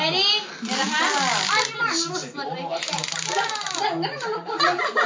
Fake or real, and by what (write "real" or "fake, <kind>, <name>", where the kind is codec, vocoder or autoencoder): real